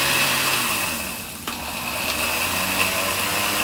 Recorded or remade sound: recorded